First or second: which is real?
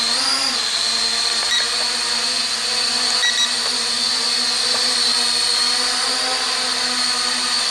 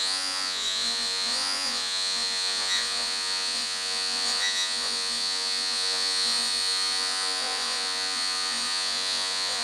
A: first